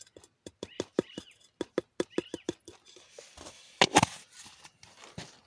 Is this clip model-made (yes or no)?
no